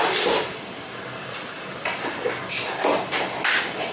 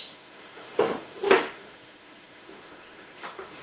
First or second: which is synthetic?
second